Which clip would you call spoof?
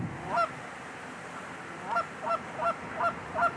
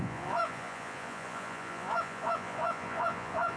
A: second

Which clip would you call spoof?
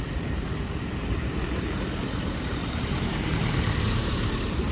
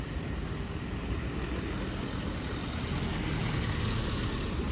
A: first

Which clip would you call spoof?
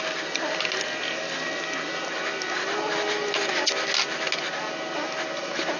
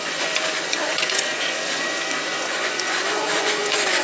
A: second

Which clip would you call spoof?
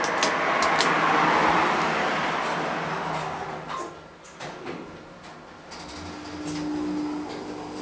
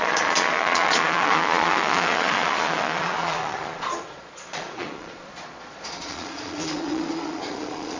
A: second